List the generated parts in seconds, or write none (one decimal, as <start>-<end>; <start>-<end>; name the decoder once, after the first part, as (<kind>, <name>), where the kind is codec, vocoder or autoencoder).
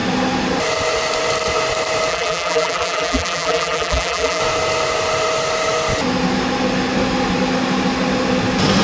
2.1-4.4 (vocoder, BigVGAN v2)